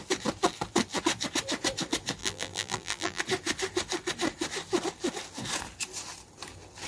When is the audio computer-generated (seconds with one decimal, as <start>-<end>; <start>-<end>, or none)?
2.2-3.2

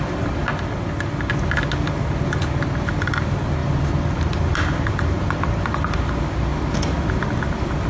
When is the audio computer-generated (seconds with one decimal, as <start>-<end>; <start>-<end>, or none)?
3.6-5.7

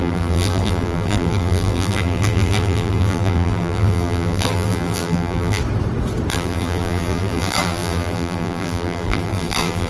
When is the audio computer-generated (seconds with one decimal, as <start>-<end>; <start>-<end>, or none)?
0.0-5.6; 6.3-9.9

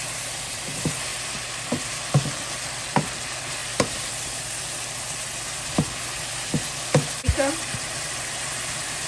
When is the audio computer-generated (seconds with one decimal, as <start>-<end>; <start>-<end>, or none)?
0.0-9.1

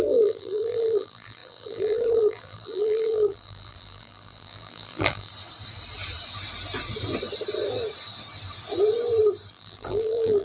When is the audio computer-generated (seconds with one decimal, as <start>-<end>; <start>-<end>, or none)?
0.0-5.3; 9.5-10.4

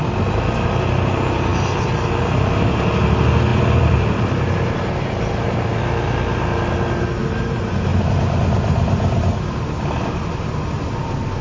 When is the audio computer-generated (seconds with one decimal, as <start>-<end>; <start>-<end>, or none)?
3.5-4.9; 7.9-9.2

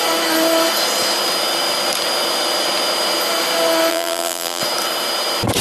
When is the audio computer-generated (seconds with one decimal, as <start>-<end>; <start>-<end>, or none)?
3.9-4.6